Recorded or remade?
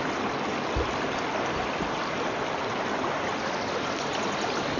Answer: recorded